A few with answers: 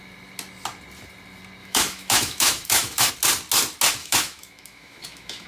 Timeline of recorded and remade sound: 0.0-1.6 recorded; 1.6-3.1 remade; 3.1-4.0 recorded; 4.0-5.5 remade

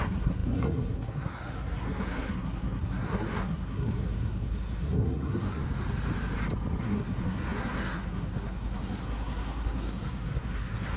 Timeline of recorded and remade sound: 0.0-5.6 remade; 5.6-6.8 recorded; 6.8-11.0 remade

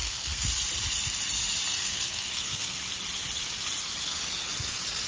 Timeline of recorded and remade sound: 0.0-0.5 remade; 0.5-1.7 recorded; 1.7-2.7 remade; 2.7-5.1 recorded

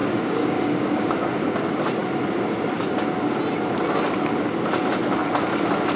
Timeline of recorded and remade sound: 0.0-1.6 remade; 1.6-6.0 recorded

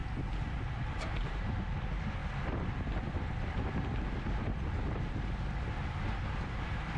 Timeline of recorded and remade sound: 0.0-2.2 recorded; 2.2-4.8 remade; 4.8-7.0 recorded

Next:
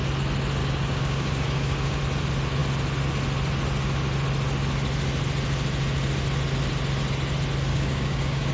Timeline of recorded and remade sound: 0.0-0.6 recorded; 0.6-2.0 remade; 2.0-7.7 recorded; 7.7-8.5 remade